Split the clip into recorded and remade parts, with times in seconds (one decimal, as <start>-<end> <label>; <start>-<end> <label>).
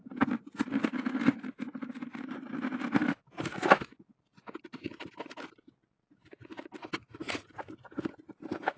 0.0-8.8 recorded